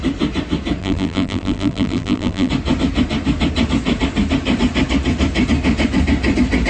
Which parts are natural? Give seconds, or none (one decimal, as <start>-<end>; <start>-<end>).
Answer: 0.0-0.8; 2.5-6.7